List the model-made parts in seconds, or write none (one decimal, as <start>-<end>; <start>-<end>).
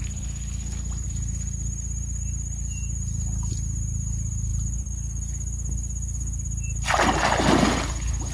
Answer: none